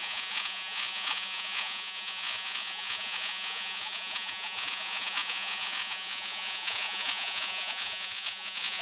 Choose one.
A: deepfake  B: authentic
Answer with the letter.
A